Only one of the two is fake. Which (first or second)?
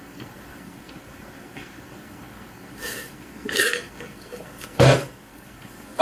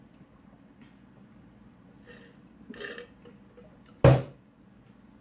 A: first